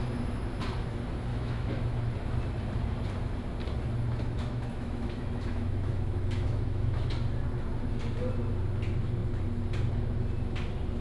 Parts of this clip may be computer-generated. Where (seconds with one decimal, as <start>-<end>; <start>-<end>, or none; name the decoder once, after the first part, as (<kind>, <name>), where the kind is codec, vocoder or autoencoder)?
1.3-2.0 (autoencoder, DAC-VAE); 4.1-7.1